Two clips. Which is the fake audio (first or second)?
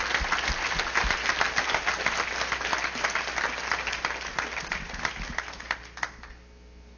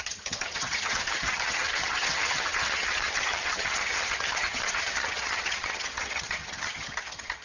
second